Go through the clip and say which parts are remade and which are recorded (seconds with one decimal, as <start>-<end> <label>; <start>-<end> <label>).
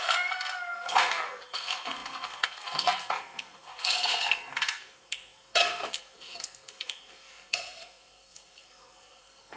0.0-9.6 remade